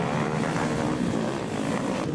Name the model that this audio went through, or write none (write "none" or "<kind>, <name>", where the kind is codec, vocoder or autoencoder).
none